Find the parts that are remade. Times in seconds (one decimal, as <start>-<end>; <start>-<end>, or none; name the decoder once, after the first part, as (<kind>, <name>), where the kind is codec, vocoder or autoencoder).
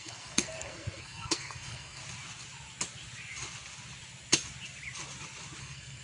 0.0-2.0 (codec, SNAC); 5.6-6.0